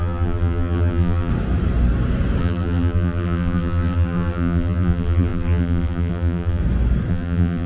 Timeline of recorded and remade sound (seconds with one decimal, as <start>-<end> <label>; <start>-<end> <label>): 0.0-1.3 remade; 1.3-2.4 recorded; 2.4-6.6 remade; 6.6-7.1 recorded; 7.1-7.7 remade